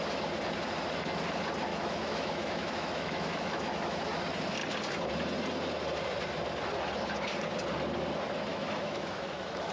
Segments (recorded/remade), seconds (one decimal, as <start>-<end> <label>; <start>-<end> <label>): 0.0-1.7 recorded; 1.7-4.0 remade; 4.0-8.5 recorded; 8.5-9.7 remade